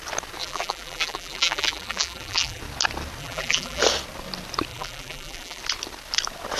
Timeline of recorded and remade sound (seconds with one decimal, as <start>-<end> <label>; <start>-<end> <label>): 0.0-0.4 recorded; 0.4-2.6 remade; 2.6-3.2 recorded; 3.2-3.8 remade; 3.8-4.7 recorded; 4.7-5.6 remade; 5.6-6.6 recorded